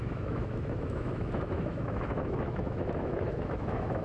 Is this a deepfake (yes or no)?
yes